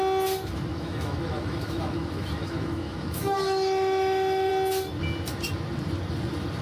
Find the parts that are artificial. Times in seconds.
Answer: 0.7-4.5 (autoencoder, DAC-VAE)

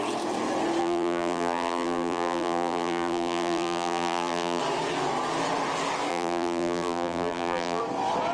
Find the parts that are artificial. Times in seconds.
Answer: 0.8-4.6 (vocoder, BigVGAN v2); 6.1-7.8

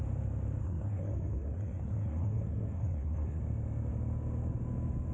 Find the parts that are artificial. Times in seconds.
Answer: 0.6-3.4 (codec, SNAC)